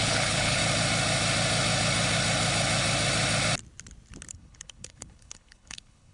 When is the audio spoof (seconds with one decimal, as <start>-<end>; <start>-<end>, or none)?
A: 0.0-0.6; 4.3-6.1